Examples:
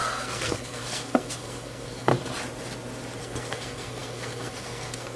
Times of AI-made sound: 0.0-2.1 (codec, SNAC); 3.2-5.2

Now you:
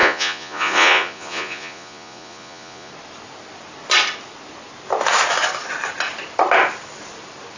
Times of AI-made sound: 0.0-2.9 (vocoder, Vocos)

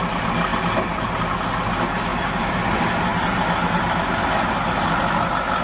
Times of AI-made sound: 2.1-2.7 (vocoder, BigVGAN v2)